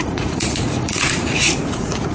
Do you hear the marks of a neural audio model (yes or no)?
yes